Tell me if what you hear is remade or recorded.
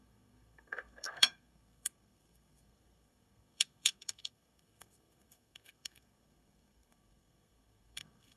remade